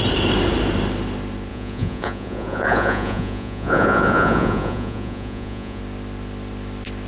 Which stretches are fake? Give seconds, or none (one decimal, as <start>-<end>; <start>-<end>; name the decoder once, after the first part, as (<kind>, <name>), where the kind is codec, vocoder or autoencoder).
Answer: 1.5-5.8 (vocoder, Vocos)